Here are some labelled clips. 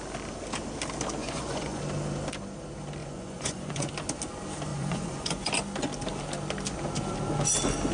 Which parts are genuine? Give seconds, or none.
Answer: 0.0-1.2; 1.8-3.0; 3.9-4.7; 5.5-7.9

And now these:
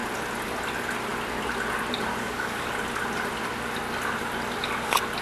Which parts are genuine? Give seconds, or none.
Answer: 0.0-2.1; 2.7-5.2

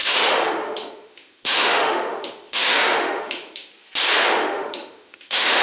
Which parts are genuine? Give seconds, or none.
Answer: 3.7-4.4

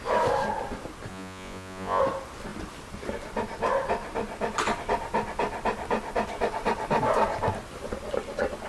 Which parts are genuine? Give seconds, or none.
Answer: 0.0-1.1; 2.0-8.7

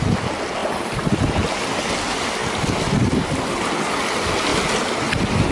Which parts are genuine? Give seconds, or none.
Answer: 0.0-2.4; 3.0-5.5

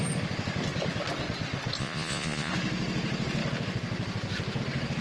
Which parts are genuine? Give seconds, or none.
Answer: 0.0-1.8; 2.5-5.0